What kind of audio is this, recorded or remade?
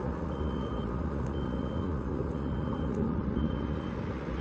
remade